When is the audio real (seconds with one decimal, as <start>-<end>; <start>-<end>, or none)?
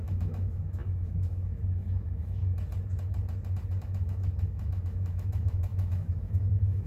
2.4-3.8